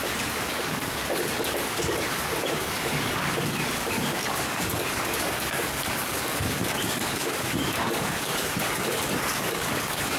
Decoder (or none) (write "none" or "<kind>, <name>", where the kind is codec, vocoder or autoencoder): codec, DAC